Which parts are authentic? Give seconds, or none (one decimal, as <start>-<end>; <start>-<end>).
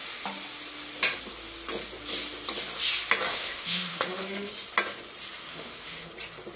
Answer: 0.0-3.3; 4.5-5.5; 6.1-6.6